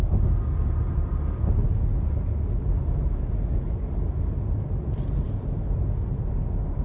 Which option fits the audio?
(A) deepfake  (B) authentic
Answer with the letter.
B